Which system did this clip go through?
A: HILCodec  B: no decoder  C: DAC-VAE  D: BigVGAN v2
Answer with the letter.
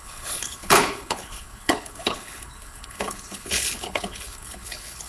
A